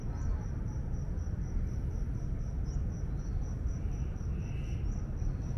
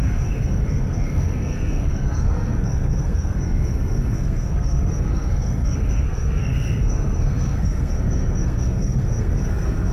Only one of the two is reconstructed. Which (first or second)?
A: second